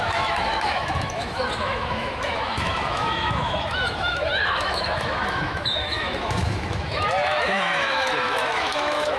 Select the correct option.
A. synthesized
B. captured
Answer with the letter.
A